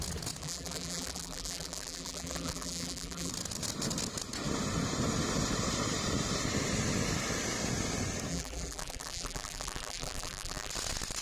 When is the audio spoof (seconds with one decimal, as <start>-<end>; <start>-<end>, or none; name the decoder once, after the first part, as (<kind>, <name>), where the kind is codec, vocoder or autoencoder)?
0.4-3.3 (vocoder, BigVGAN v2); 8.3-10.7